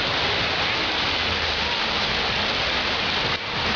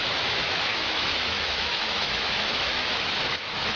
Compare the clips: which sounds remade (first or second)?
second